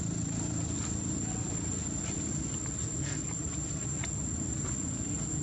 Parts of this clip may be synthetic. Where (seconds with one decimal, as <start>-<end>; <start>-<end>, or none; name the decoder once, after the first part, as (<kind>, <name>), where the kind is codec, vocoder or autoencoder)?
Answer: none